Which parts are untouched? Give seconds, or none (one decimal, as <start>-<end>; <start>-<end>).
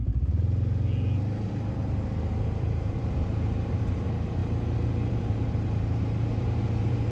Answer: 0.0-2.4; 4.4-5.1